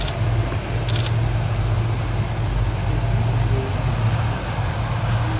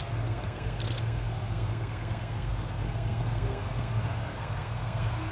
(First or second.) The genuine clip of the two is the first